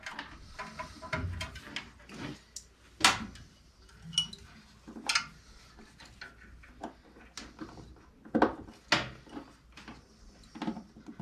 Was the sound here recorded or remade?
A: recorded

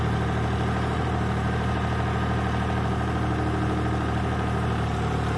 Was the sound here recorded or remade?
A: recorded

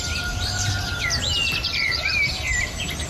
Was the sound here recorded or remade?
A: recorded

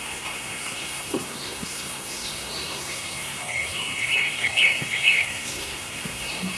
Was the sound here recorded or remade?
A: remade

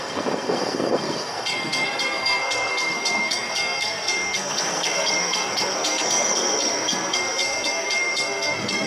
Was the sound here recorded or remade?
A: remade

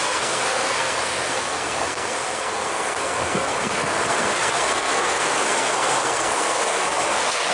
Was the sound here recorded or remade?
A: remade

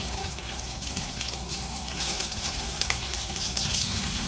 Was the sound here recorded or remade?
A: remade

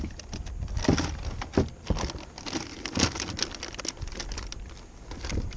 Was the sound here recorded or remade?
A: recorded